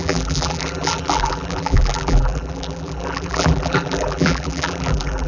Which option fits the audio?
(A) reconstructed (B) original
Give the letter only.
A